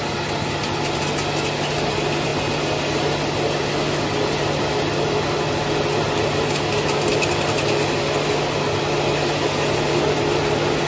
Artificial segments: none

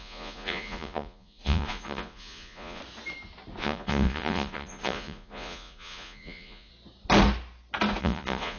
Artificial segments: 0.0-2.8 (vocoder, Vocos); 3.6-6.7; 8.0-8.6

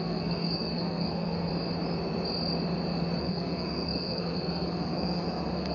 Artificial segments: 0.0-1.5 (codec, SNAC); 3.2-5.7

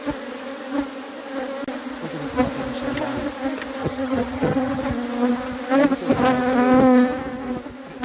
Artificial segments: 3.8-4.8 (vocoder, HiFi-GAN)